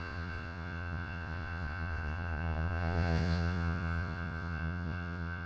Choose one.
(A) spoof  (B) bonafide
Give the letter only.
A